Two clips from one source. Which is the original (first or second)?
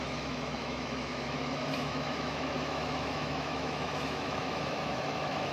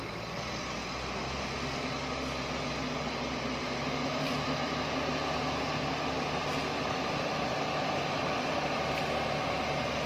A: second